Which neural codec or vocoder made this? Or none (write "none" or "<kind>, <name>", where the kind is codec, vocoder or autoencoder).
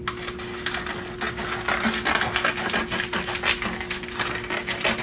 none